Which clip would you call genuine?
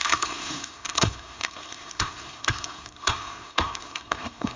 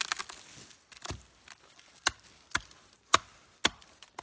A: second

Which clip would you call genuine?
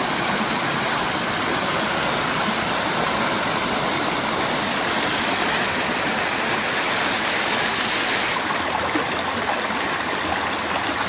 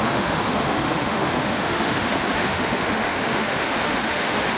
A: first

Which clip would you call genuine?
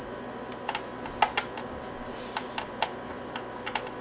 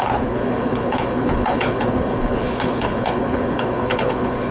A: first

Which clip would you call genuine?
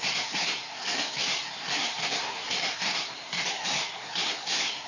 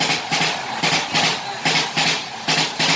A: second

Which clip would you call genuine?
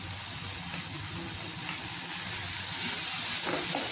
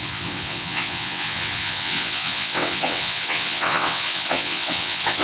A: first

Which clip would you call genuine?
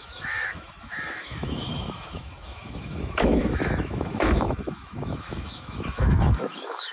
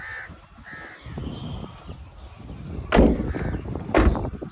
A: second